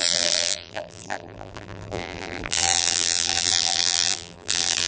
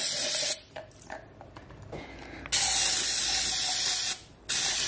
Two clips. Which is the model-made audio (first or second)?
first